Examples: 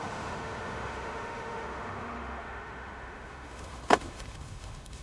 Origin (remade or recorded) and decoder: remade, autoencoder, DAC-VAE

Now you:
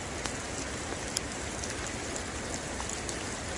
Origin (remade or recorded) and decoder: recorded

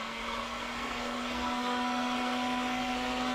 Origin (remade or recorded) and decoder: remade, codec, SNAC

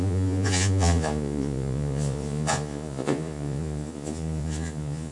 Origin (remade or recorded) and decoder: remade, vocoder, Vocos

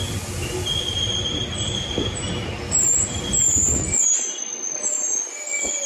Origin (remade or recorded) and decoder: recorded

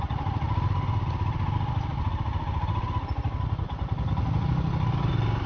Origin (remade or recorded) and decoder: recorded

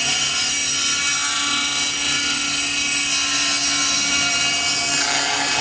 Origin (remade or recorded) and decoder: recorded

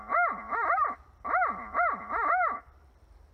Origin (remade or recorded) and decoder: remade, vocoder, BigVGAN v2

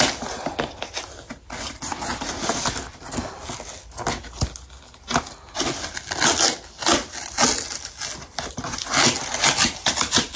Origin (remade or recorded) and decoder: recorded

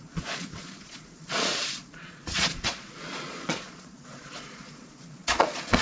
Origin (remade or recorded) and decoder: remade, vocoder, Vocos